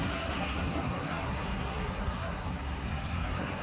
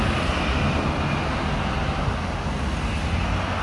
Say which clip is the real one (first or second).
second